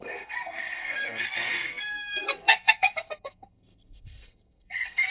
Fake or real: fake